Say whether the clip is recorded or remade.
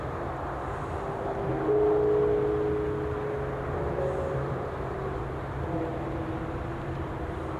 recorded